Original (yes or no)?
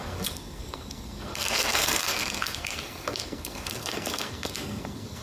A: no